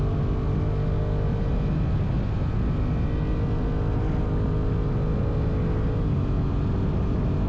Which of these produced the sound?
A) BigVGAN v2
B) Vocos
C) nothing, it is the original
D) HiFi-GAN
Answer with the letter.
C